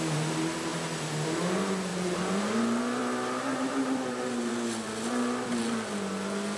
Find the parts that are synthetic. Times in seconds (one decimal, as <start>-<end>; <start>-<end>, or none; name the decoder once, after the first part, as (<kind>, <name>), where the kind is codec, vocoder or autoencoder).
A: 1.9-2.5 (vocoder, BigVGAN v2); 3.0-4.5